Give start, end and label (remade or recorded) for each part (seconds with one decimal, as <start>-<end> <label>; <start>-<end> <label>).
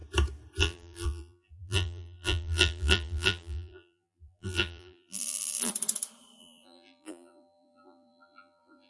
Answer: 0.0-0.6 recorded; 0.6-5.7 remade; 5.7-6.4 recorded; 6.4-8.9 remade